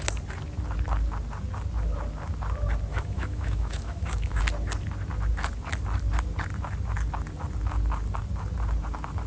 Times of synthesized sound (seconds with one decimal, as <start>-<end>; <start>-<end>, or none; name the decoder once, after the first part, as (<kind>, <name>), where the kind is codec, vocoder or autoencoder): 2.9-4.4 (autoencoder, DAC-VAE)